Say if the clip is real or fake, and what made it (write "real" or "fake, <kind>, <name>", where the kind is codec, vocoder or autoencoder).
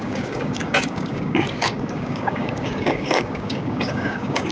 fake, codec, DAC